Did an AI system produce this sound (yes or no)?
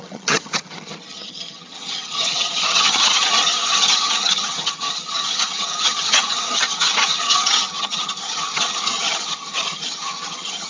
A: yes